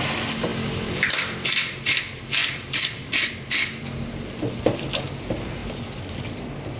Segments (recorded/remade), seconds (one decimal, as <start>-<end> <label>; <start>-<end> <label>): 0.0-0.5 recorded; 0.5-1.7 remade; 1.7-2.4 recorded; 2.4-3.3 remade; 3.3-5.6 recorded; 5.6-6.8 remade